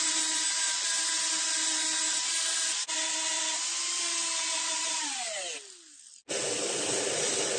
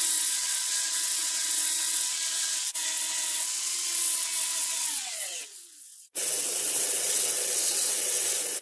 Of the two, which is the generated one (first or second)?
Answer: second